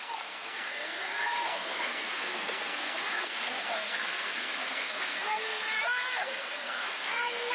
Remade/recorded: remade